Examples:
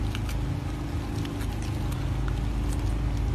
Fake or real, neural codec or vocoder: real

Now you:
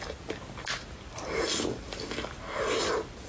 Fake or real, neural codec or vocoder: real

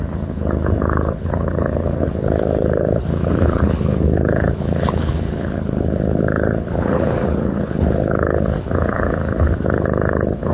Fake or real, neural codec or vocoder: fake, codec, HILCodec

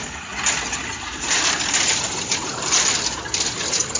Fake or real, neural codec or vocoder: fake, vocoder, BigVGAN v2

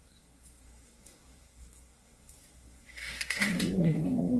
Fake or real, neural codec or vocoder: fake, codec, SNAC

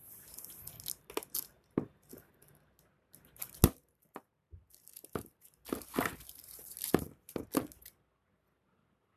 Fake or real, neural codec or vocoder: real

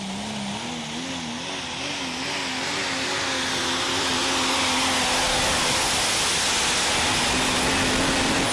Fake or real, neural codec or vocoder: real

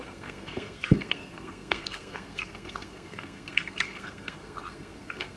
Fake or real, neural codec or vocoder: fake, codec, SNAC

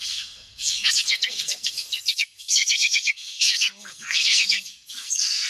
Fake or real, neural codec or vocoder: fake, codec, SNAC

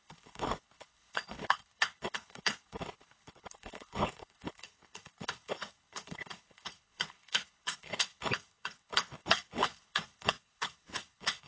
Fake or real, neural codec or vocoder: fake, codec, HILCodec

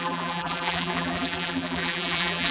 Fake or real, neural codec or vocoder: fake, vocoder, BigVGAN v2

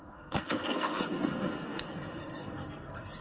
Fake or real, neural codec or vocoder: fake, codec, SNAC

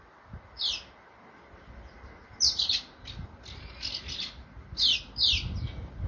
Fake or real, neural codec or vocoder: real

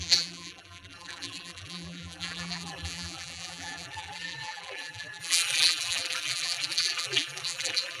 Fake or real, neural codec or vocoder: fake, vocoder, BigVGAN v2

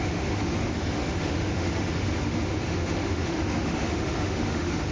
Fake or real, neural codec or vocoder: fake, autoencoder, DAC-VAE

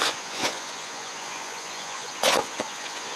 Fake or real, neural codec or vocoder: fake, vocoder, Vocos